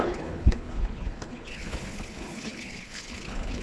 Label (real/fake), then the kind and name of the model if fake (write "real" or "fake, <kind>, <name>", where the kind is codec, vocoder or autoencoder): fake, codec, HILCodec